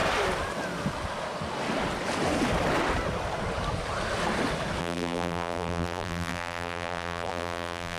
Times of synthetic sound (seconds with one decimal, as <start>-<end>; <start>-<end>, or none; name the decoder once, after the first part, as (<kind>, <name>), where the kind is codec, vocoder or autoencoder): 4.8-8.0 (vocoder, BigVGAN v2)

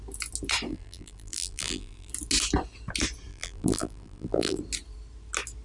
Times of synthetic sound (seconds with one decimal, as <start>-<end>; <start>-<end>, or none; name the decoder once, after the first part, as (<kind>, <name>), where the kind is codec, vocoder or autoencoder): 0.7-2.1 (vocoder, BigVGAN v2); 3.3-4.6

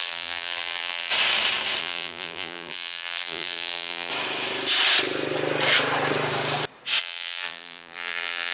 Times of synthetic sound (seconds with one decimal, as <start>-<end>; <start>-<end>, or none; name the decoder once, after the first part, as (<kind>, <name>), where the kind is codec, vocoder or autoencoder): 0.0-1.1 (vocoder, BigVGAN v2); 1.8-4.1; 7.0-8.5

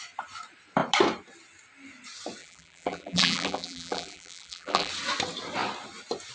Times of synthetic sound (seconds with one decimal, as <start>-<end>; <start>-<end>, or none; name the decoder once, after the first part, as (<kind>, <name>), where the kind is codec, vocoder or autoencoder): 2.4-4.9 (vocoder, BigVGAN v2)

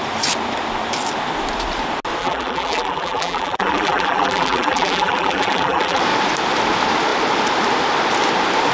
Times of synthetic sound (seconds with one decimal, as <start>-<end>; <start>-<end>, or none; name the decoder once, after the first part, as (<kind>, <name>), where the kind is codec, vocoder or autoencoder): 2.2-6.0 (vocoder, BigVGAN v2)

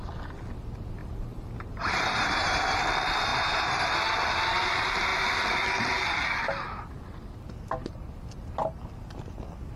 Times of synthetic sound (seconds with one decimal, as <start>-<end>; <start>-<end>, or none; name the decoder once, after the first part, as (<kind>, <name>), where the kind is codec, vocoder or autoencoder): 1.0-2.6 (vocoder, BigVGAN v2); 3.3-3.9